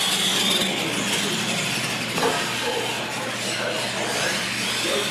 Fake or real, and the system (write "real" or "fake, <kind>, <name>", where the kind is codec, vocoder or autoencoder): real